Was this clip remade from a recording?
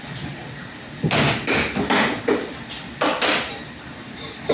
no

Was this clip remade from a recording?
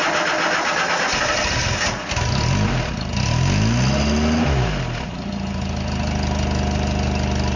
no